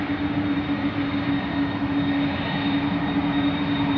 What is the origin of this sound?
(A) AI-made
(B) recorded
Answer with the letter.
B